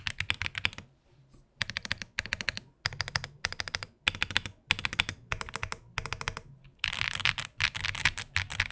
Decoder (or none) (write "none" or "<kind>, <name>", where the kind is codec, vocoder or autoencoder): none